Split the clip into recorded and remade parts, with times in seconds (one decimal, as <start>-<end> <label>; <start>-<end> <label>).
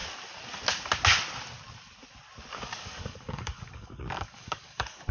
0.0-2.5 recorded; 2.5-5.1 remade